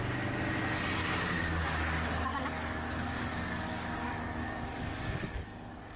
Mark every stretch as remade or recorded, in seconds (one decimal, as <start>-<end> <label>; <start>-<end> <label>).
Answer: 0.0-1.0 recorded; 1.0-1.6 remade; 1.6-2.3 recorded; 2.3-6.0 remade